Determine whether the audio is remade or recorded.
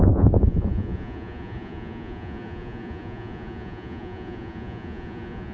remade